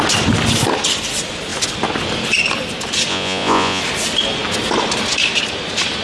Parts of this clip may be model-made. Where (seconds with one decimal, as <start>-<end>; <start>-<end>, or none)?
3.1-3.8